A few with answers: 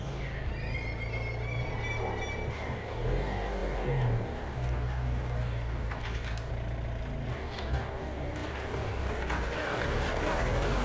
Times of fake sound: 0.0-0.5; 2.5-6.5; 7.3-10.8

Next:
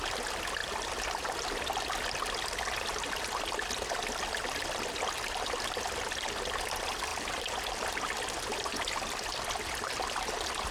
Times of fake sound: 7.1-7.9

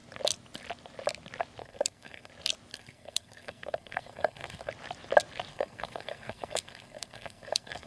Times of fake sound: 1.6-2.3; 2.7-4.7; 5.5-7.9

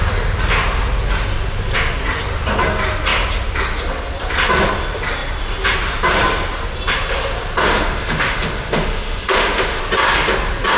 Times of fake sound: 7.6-9.8

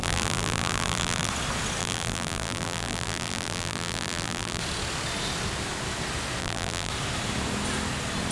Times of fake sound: 0.0-1.3; 1.8-4.6; 6.4-6.9

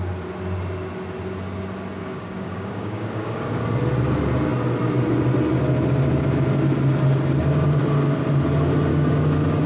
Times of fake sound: 2.0-3.6; 8.9-9.7

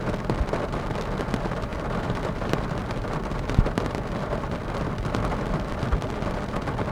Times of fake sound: 1.7-5.8

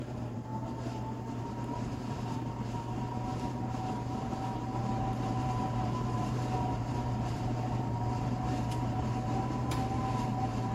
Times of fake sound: 0.0-0.5; 1.4-10.7